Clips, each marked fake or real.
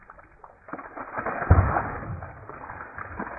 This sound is real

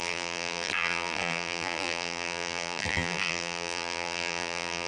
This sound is fake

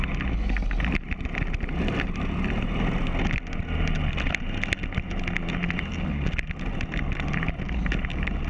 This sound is real